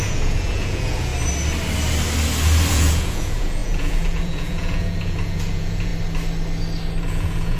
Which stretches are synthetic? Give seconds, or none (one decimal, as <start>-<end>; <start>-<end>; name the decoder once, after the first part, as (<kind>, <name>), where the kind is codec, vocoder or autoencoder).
0.0-1.1 (vocoder, Vocos); 2.7-5.9; 7.1-7.6